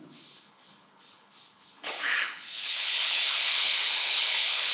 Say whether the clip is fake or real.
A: fake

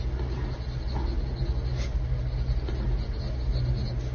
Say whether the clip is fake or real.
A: real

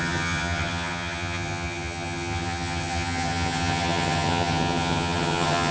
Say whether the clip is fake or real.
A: fake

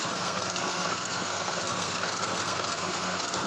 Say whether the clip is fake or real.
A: fake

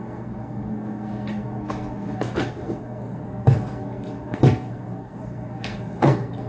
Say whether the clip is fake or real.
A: fake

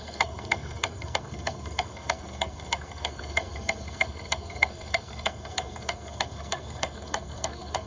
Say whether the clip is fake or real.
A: fake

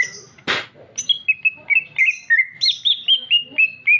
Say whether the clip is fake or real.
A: real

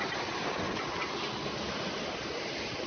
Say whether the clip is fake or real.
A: real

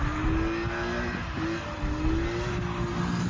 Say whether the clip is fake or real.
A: real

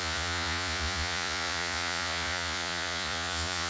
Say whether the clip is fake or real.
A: fake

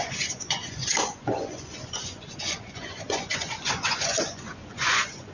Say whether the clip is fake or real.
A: fake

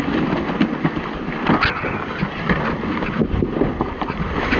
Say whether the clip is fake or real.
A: real